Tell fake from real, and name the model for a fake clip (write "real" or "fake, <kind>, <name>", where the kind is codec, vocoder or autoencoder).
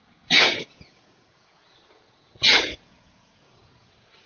fake, vocoder, Vocos